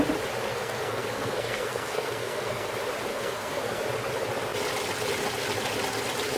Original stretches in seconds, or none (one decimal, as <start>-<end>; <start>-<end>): 0.0-0.5; 2.7-3.1; 3.8-6.4